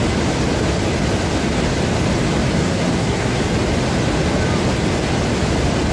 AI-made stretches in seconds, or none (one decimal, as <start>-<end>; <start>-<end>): 2.6-3.4